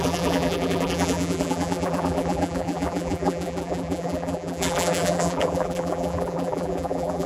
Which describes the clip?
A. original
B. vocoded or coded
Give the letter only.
B